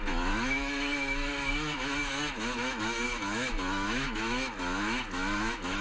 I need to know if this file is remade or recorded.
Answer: remade